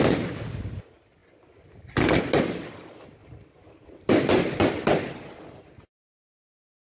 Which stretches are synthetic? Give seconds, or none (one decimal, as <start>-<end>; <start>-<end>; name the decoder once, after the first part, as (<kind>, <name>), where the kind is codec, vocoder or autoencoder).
none